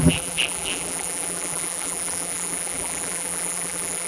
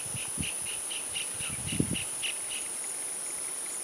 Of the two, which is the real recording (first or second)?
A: second